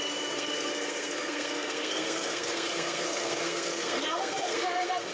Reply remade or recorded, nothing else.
remade